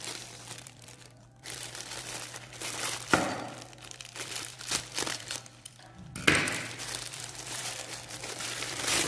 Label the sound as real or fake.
fake